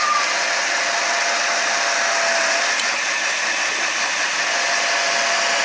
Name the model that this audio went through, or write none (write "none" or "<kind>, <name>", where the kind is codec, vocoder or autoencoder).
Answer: none